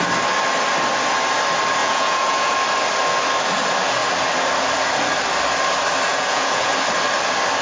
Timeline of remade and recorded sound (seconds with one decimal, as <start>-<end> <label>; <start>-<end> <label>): 0.0-1.8 recorded; 1.8-2.5 remade; 2.5-6.1 recorded; 6.1-6.7 remade; 6.7-7.6 recorded